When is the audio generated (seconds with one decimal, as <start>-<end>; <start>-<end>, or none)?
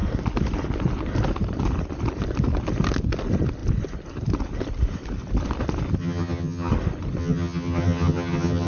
6.0-6.7; 7.2-8.7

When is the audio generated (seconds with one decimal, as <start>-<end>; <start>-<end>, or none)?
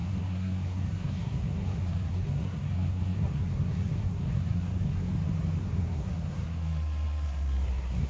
0.0-5.1; 5.6-8.1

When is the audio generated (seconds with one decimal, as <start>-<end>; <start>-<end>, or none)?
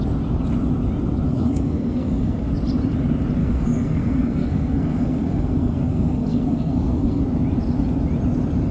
1.3-2.5; 3.4-7.2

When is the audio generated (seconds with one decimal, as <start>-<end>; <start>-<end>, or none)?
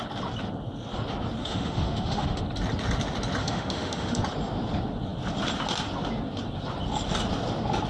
1.4-2.4; 3.4-4.2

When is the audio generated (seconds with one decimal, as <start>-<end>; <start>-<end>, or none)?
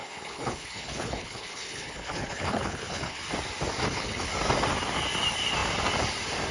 0.0-3.2; 3.8-4.3